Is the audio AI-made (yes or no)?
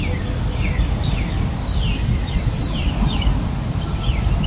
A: no